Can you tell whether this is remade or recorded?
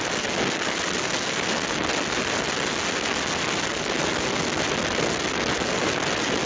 recorded